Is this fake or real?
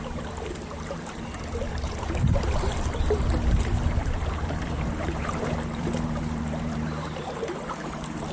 fake